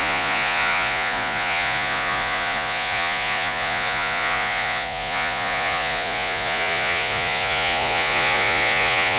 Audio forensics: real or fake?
fake